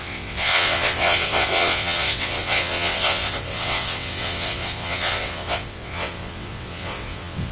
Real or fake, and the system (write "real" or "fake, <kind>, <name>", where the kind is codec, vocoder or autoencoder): fake, vocoder, WaveNeXt